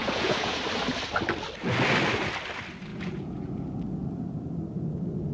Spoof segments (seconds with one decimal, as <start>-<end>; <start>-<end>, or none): 0.0-0.6; 2.9-3.6